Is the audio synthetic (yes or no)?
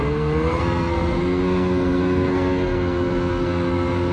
yes